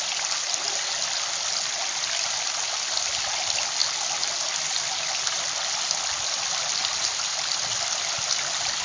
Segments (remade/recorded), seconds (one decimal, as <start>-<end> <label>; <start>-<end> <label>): 0.0-8.8 recorded